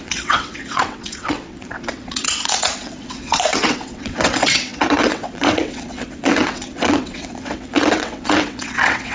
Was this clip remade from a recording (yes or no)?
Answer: yes